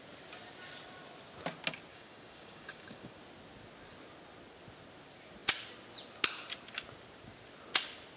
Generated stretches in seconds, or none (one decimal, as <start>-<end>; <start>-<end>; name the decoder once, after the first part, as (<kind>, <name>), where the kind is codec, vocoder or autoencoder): 1.9-3.1 (codec, DAC)